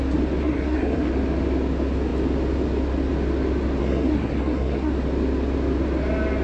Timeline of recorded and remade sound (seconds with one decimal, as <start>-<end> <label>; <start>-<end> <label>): 0.0-0.4 recorded; 0.4-1.1 remade; 1.1-3.8 recorded; 3.8-4.9 remade; 4.9-6.4 recorded